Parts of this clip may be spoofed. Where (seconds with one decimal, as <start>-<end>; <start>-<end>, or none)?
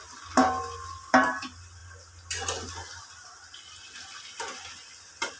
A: none